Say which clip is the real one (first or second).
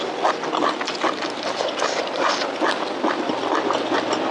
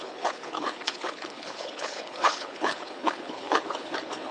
first